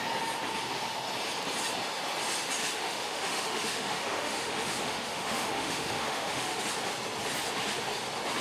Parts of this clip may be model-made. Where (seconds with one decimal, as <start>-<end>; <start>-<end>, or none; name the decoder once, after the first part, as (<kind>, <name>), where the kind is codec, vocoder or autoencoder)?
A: 2.6-6.6 (autoencoder, DAC-VAE)

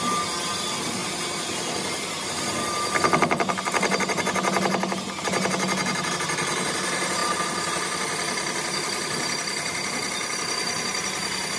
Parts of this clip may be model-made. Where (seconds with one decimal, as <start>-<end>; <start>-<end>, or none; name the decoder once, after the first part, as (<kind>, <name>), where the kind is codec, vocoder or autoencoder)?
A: none

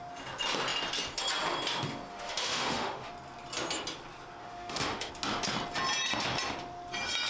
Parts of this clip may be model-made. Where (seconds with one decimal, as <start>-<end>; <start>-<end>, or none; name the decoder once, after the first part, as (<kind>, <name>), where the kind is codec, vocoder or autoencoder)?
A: 2.1-3.1 (autoencoder, DAC-VAE); 4.4-5.1

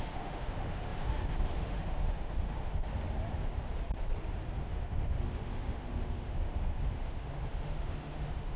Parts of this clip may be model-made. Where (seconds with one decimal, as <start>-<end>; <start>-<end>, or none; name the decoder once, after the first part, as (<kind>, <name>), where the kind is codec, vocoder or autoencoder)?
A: 0.0-2.9 (autoencoder, DAC-VAE); 4.6-8.6

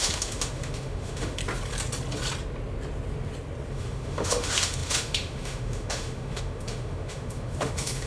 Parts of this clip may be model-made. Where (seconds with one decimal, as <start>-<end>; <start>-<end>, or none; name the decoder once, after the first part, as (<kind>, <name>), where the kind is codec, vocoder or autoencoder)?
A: 0.0-1.4 (autoencoder, DAC-VAE); 3.7-8.1

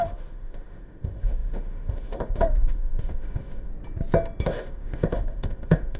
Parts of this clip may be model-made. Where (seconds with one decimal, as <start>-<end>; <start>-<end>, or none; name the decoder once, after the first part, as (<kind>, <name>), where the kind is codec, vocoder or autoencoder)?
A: 0.0-3.7 (autoencoder, DAC-VAE); 4.4-6.0

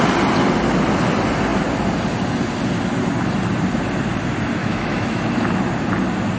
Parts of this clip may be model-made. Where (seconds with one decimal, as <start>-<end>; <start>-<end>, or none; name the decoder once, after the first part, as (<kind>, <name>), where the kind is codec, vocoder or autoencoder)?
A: 4.6-5.2 (autoencoder, DAC-VAE)